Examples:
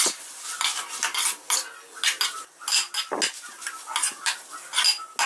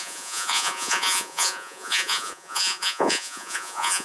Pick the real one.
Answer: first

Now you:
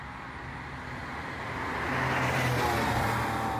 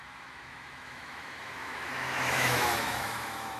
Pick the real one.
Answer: first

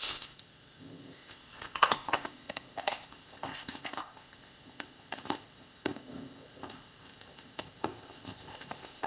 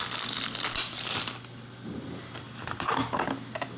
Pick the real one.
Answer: second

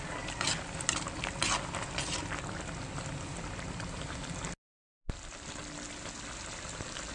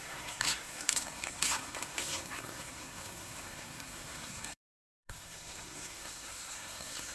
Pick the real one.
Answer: first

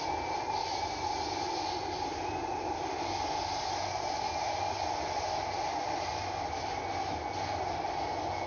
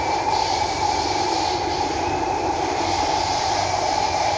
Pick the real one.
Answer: first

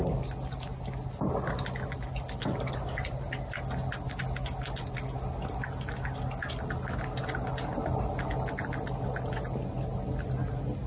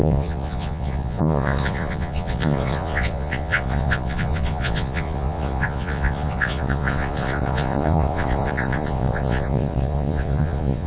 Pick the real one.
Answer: first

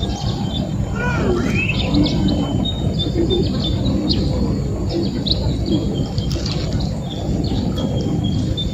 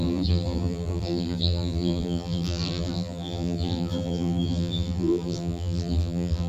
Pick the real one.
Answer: first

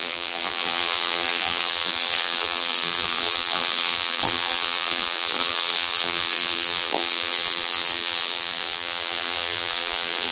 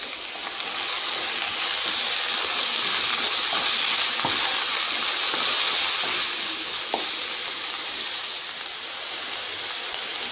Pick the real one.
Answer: second